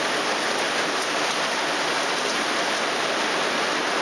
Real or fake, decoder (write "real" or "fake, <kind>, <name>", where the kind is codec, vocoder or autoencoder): real